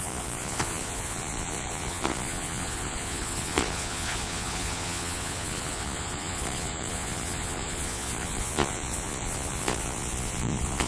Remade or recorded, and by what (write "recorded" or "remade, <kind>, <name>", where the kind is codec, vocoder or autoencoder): remade, vocoder, Vocos